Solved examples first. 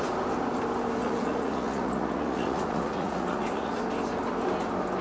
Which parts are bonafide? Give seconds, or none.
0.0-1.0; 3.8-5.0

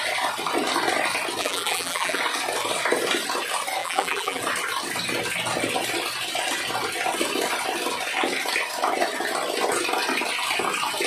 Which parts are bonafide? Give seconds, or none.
0.0-1.4; 2.2-3.8; 4.4-11.1

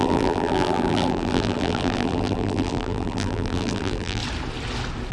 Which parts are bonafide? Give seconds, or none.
4.2-5.1

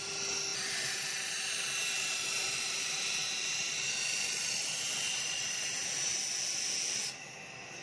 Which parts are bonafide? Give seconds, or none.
0.0-0.5; 3.9-7.8

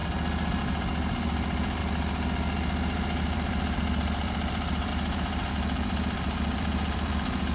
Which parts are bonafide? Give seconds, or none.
0.0-0.6; 1.8-3.2; 4.9-5.5

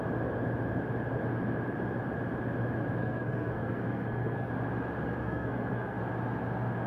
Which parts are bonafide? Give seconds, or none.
0.0-3.0; 4.5-5.2; 6.0-6.9

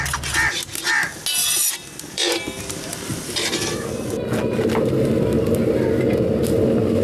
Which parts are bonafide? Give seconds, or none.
0.0-1.4; 2.6-3.1; 4.1-7.0

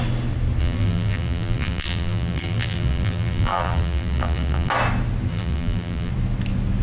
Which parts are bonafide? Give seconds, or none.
0.0-0.6; 4.7-5.3; 6.1-6.8